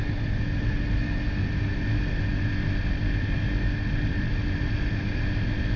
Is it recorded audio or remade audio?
recorded